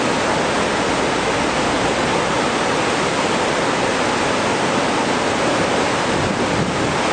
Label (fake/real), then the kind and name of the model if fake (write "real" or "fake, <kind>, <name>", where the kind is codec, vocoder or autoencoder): real